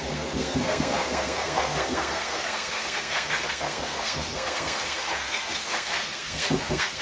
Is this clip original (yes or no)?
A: no